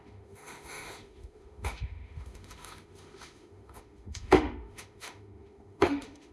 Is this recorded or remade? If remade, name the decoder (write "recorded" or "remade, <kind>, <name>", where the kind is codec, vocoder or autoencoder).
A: remade, autoencoder, DAC-VAE